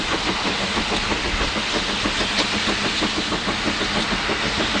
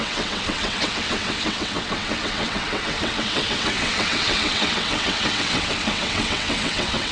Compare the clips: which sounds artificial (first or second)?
second